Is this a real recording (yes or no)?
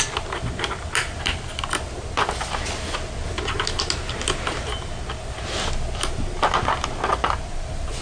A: yes